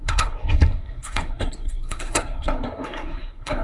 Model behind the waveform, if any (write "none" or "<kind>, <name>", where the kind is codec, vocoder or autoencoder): codec, SNAC